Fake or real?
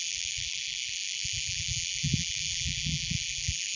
fake